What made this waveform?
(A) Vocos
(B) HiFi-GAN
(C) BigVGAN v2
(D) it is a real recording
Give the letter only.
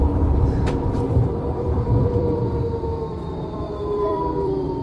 C